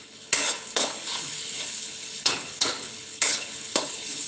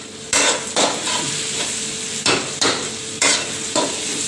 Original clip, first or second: second